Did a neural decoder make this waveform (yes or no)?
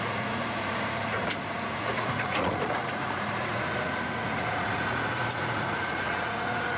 yes